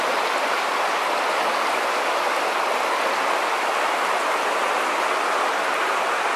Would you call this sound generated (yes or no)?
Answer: no